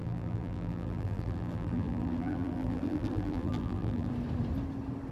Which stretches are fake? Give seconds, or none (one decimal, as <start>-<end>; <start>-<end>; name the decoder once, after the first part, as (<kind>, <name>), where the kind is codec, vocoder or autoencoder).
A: 0.0-4.1 (vocoder, BigVGAN v2)